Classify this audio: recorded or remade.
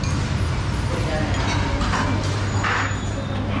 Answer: recorded